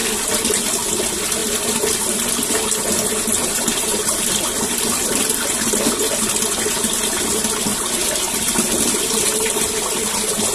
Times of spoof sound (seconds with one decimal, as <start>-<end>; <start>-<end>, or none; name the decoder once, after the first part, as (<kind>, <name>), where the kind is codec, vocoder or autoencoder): 1.4-2.3 (vocoder, BigVGAN v2); 3.4-5.3; 7.7-10.1